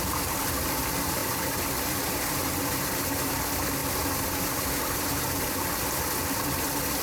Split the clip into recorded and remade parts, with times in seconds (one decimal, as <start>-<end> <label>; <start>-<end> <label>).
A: 0.0-7.0 recorded